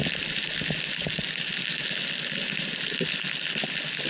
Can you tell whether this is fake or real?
real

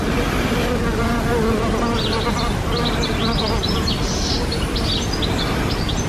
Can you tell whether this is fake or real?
real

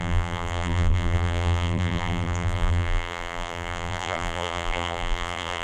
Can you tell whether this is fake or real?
fake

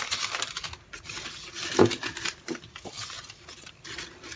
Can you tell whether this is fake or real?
real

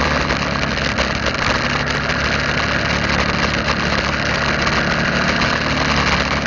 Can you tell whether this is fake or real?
real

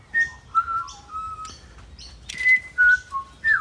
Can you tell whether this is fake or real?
real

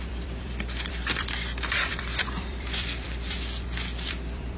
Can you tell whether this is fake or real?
fake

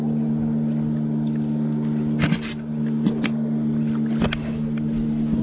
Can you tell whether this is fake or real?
real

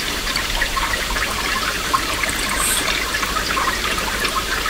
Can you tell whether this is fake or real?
fake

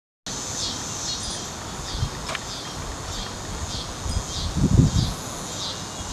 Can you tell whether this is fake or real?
real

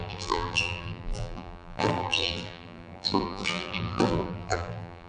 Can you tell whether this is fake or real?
fake